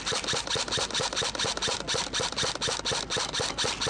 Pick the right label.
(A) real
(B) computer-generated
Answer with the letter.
A